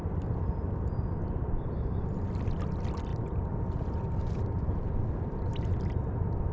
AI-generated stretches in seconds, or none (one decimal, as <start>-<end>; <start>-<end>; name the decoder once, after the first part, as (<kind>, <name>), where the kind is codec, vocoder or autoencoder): none